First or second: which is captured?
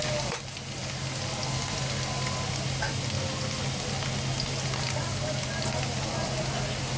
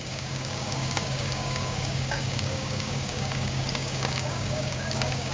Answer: first